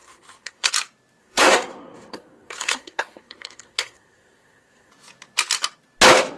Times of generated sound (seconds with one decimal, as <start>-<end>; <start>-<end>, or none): 0.0-0.7; 1.2-4.9